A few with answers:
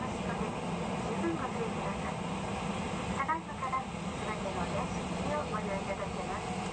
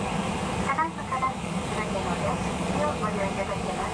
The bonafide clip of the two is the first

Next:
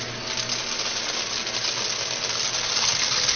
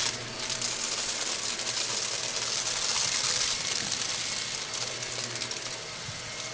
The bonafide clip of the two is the first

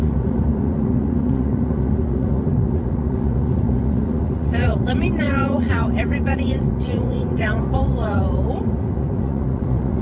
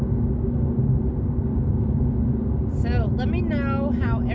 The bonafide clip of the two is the second